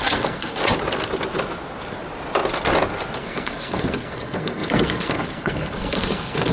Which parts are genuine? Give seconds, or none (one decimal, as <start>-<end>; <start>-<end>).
0.6-3.2